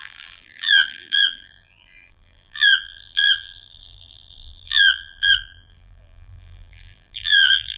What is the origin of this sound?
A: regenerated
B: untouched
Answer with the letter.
A